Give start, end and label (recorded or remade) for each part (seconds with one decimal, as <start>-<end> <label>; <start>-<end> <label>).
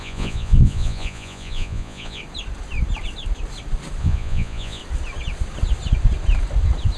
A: 0.0-2.2 remade; 2.2-4.0 recorded; 4.0-4.8 remade; 4.8-7.0 recorded